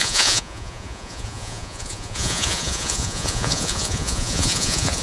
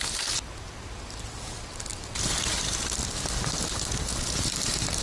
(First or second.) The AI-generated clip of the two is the first